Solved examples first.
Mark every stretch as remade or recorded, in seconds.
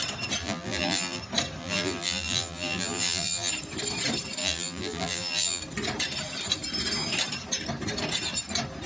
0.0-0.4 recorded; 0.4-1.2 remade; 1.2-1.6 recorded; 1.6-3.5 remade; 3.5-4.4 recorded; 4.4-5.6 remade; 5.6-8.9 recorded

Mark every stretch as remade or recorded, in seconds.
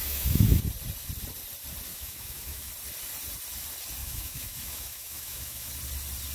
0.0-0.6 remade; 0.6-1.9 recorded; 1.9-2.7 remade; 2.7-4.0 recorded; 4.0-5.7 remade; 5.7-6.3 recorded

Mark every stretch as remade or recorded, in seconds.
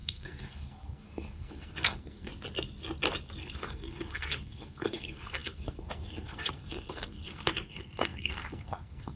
0.0-2.3 remade; 2.3-3.4 recorded; 3.4-9.2 remade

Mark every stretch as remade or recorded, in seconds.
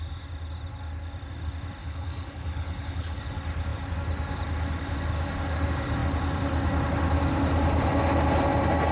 0.0-1.8 recorded; 1.8-3.2 remade; 3.2-8.9 recorded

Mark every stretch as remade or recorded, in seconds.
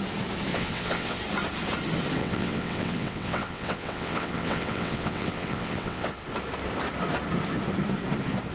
0.0-0.5 recorded; 0.5-1.2 remade; 1.2-2.2 recorded; 2.2-6.1 remade; 6.1-8.5 recorded